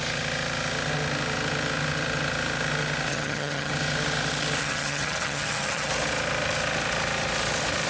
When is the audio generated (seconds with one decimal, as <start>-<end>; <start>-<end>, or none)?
3.1-3.7; 4.6-5.9